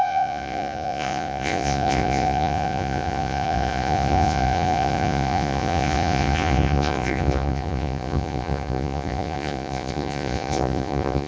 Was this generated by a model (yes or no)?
yes